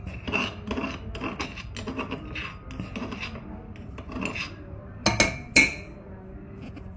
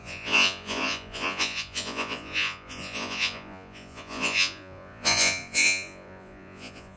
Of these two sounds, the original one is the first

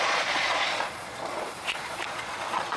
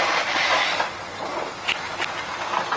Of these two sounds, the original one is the second